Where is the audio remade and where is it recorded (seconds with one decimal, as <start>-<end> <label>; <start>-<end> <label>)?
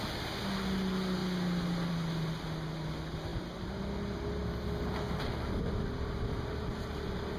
0.0-7.4 recorded